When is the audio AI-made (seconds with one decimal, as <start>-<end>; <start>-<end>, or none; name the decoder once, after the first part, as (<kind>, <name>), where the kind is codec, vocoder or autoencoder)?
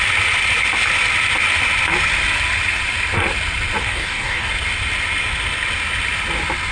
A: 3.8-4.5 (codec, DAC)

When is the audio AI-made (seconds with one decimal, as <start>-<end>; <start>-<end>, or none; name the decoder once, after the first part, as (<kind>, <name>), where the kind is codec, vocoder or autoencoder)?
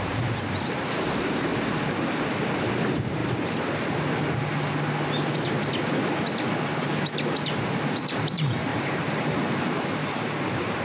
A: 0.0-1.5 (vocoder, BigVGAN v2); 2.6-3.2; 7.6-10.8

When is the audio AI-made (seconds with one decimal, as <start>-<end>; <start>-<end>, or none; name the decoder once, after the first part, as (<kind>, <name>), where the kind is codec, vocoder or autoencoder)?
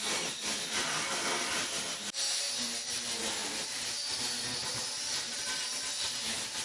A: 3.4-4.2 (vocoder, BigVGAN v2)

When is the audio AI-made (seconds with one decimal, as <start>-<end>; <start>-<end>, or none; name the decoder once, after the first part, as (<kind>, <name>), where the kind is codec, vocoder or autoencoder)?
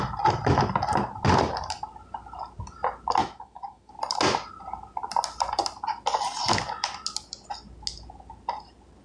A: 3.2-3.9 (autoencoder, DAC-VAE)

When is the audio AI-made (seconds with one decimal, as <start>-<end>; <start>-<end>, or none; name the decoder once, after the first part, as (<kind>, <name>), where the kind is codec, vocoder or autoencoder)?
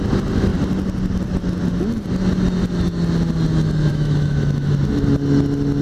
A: 3.9-4.7 (autoencoder, DAC-VAE)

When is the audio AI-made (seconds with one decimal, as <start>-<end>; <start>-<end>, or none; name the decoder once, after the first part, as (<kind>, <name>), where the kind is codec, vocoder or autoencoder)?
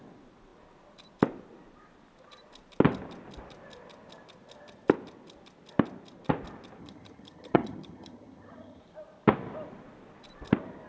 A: 6.8-8.8 (vocoder, HiFi-GAN)